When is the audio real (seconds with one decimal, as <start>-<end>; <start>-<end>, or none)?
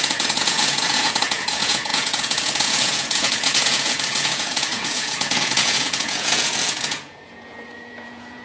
none